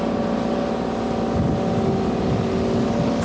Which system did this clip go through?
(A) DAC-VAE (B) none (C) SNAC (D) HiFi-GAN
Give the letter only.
B